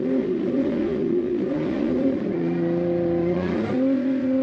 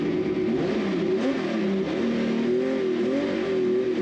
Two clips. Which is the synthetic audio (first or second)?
first